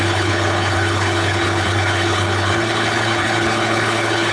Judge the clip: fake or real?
fake